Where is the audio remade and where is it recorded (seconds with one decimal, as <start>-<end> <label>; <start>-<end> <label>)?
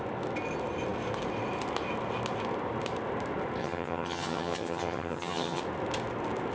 0.0-3.6 recorded; 3.6-5.6 remade; 5.6-6.5 recorded